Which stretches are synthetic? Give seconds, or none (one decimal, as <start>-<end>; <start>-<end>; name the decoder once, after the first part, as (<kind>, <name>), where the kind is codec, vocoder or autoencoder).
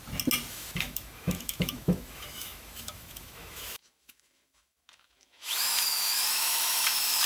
0.5-7.3 (autoencoder, DAC-VAE)